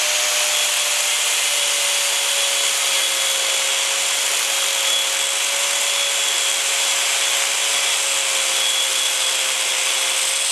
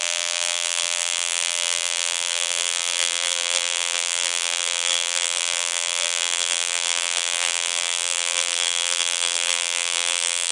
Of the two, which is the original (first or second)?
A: first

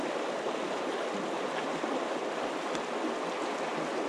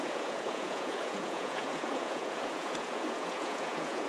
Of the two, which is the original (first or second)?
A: first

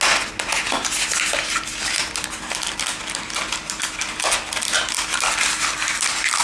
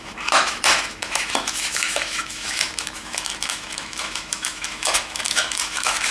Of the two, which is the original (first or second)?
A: first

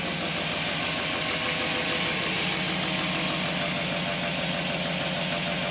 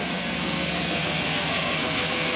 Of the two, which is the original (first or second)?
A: first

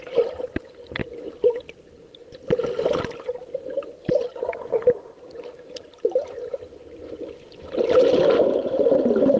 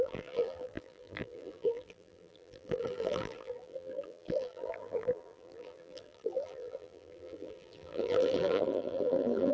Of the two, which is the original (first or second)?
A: first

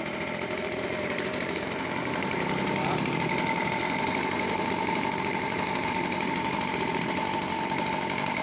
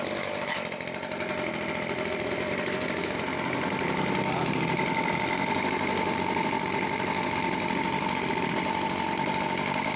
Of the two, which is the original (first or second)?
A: second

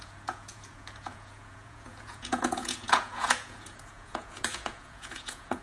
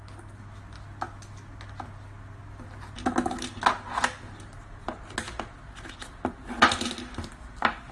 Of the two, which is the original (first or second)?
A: second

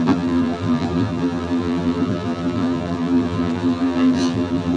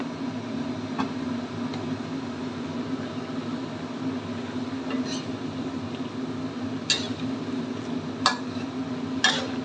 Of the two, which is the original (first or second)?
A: second